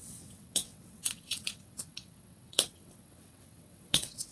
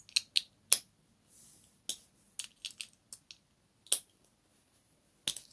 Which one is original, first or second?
second